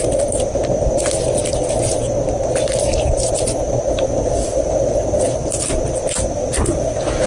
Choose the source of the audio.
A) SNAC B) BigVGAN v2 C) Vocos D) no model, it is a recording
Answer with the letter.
D